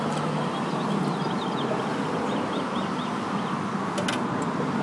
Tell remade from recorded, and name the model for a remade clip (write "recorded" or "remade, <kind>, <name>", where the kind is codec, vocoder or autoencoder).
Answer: recorded